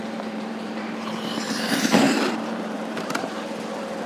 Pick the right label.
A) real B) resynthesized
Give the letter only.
B